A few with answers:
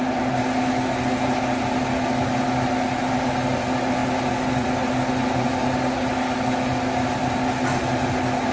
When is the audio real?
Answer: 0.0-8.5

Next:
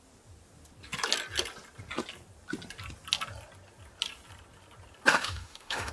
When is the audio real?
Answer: 0.0-5.1